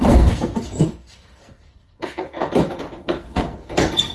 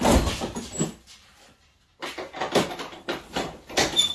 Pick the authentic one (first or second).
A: second